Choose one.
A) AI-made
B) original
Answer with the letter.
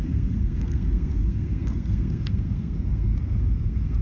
A